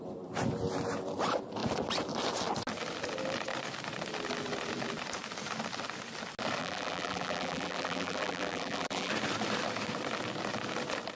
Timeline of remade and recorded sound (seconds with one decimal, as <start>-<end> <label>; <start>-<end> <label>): 0.0-6.6 recorded; 6.6-9.1 remade; 9.1-11.2 recorded